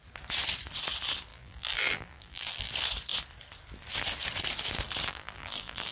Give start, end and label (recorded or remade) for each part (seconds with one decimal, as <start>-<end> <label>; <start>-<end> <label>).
0.0-1.3 recorded; 1.3-2.7 remade; 2.7-5.1 recorded; 5.1-5.9 remade